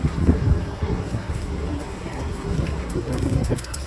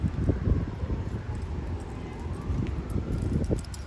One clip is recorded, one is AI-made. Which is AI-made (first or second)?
first